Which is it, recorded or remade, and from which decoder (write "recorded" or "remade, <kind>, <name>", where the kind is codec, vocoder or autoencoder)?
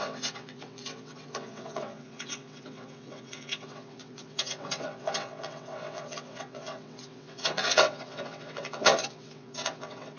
remade, vocoder, WaveNeXt